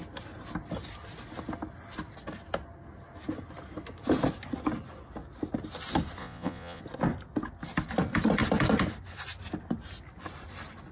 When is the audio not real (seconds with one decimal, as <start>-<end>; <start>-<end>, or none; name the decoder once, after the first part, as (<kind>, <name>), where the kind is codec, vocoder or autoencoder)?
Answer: 6.2-6.8 (vocoder, Vocos)